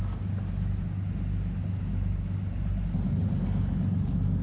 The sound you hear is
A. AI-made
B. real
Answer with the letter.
B